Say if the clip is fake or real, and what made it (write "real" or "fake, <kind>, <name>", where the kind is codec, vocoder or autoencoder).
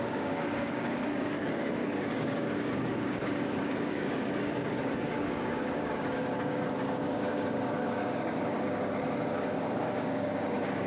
fake, codec, DAC